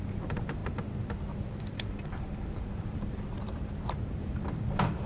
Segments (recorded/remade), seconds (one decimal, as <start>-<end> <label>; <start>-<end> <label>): 0.0-5.1 remade

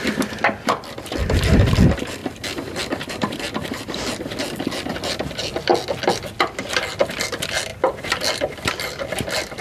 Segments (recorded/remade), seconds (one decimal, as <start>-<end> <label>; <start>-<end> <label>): 0.0-5.7 remade; 5.7-6.9 recorded; 6.9-7.7 remade; 7.7-8.4 recorded; 8.4-9.6 remade

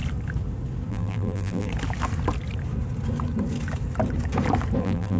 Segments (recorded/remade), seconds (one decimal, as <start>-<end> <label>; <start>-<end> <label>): 0.0-0.9 recorded; 0.9-1.7 remade; 1.7-4.8 recorded; 4.8-5.2 remade

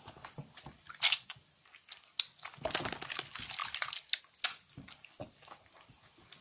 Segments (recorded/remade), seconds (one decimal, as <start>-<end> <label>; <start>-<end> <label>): 0.0-6.4 recorded